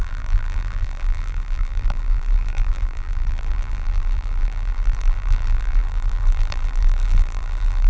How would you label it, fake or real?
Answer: fake